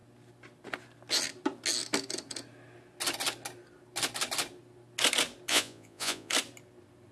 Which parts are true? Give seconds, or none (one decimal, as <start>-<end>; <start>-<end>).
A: 0.0-5.5; 6.3-7.1